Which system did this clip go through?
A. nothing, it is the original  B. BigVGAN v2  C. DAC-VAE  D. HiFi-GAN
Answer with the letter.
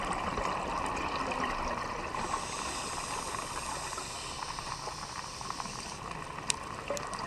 A